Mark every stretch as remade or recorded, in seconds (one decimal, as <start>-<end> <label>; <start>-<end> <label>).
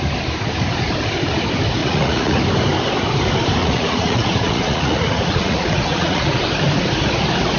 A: 0.0-1.8 recorded; 1.8-2.4 remade; 2.4-3.6 recorded; 3.6-6.4 remade; 6.4-7.6 recorded